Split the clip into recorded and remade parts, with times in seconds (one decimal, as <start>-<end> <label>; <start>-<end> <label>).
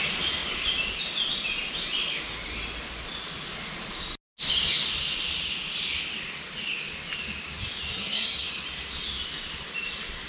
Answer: 0.0-7.9 recorded; 7.9-8.5 remade; 8.5-10.3 recorded